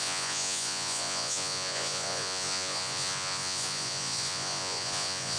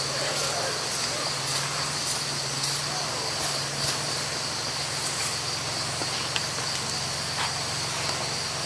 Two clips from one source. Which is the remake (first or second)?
first